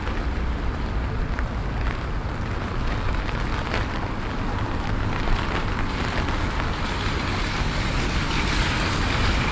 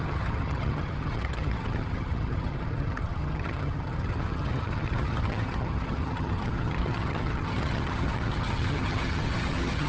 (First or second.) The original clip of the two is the first